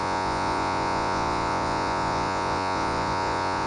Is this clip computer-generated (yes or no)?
yes